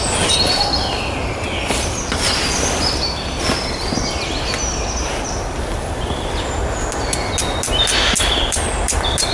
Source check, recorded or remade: recorded